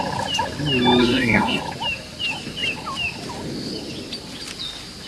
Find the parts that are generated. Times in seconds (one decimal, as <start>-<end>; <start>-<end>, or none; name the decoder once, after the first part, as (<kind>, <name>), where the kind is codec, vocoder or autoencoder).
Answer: 1.0-1.6 (codec, SNAC)